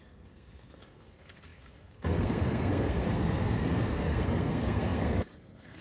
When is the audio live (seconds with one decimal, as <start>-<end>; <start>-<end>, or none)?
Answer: none